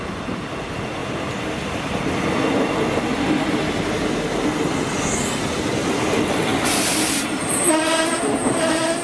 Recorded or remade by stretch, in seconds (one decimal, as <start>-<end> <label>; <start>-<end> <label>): 0.0-9.0 recorded